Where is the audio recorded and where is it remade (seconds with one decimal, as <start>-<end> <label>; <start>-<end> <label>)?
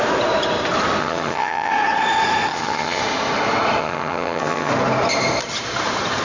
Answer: 0.0-1.0 recorded; 1.0-1.7 remade; 1.7-2.5 recorded; 2.5-3.0 remade; 3.0-3.8 recorded; 3.8-4.7 remade; 4.7-6.2 recorded